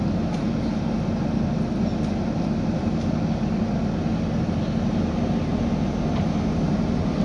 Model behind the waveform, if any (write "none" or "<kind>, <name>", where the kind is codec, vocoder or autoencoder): none